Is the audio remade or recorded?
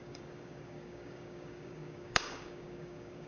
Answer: remade